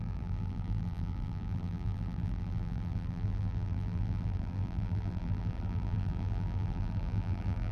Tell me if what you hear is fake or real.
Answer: fake